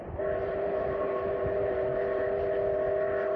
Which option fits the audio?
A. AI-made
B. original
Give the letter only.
B